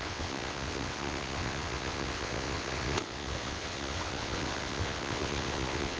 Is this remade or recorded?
remade